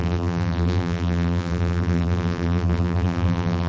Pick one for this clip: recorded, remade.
remade